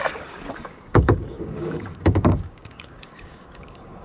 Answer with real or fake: fake